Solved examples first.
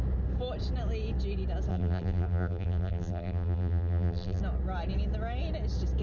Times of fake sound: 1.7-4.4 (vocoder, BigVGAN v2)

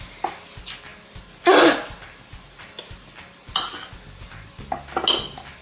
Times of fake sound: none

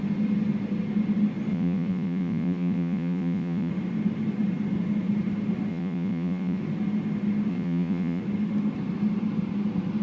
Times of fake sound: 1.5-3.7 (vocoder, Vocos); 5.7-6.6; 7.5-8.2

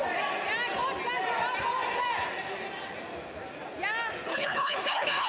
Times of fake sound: 4.3-5.3 (codec, HILCodec)

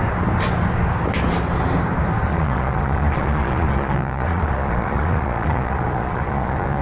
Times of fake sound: 2.3-6.8 (vocoder, Vocos)

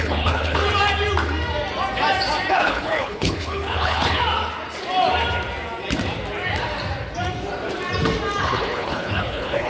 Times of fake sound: 0.0-0.6 (codec, HILCodec); 2.5-4.2; 8.4-9.7

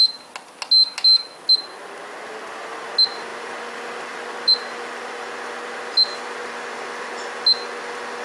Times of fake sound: none

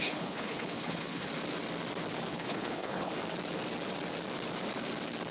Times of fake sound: 0.0-1.3 (codec, HILCodec); 2.3-3.1